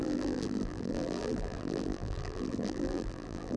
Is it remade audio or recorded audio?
remade